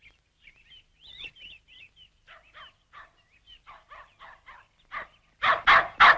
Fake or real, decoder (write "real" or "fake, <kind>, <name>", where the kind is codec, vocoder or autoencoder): real